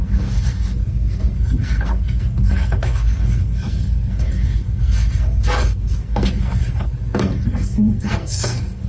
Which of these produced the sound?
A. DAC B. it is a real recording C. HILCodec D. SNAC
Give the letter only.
D